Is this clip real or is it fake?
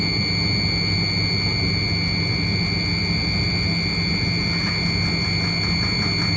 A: real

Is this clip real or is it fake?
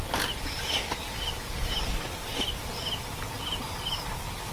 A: real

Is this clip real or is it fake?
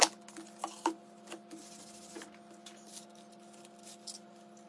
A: real